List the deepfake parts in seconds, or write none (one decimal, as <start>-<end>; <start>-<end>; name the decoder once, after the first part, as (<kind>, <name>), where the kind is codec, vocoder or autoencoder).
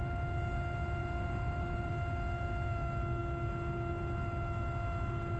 1.0-1.9 (vocoder, BigVGAN v2)